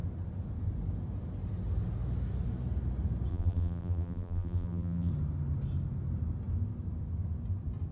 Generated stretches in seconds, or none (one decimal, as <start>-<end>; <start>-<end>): 3.3-5.1